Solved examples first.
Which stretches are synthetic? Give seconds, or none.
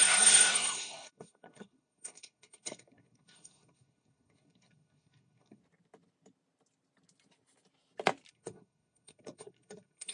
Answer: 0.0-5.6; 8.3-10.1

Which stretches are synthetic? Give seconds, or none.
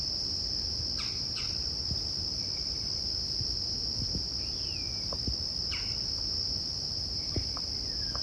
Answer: none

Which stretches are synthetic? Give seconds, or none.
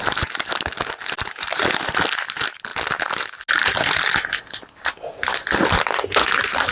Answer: none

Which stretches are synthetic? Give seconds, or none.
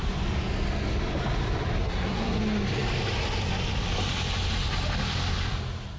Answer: 1.8-2.4